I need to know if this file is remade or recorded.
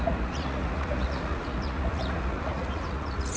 remade